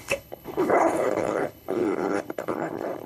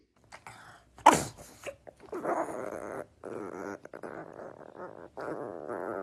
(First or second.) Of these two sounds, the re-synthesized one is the first